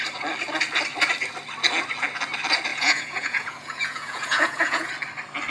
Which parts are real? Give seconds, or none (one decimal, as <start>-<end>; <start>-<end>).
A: 0.0-2.7; 4.9-5.5